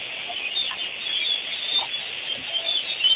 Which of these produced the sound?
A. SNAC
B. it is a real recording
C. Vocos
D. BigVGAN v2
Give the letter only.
B